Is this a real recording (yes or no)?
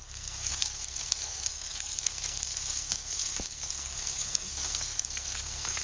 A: no